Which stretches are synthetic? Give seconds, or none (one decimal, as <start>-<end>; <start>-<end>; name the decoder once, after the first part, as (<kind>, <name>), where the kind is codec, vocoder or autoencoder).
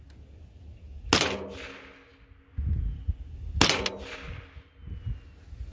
none